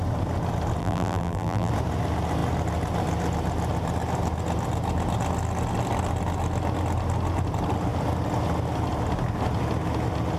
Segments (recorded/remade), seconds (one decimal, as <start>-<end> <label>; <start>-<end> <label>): 0.0-0.8 recorded; 0.8-1.7 remade; 1.7-10.4 recorded